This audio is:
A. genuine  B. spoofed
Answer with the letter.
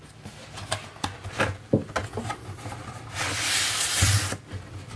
A